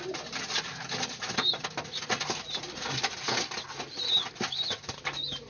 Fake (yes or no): no